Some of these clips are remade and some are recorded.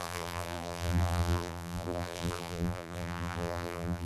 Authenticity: remade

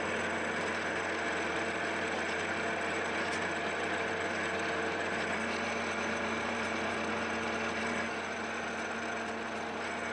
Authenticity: recorded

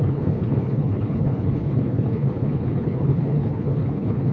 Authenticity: remade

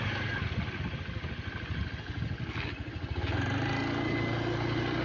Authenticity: recorded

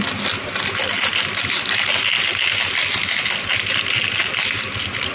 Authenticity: recorded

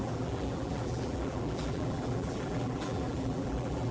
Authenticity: remade